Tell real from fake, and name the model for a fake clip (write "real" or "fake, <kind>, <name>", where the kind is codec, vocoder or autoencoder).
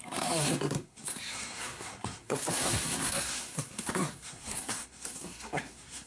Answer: fake, codec, SNAC